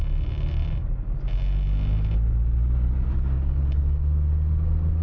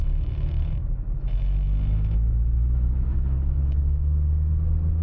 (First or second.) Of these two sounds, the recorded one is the first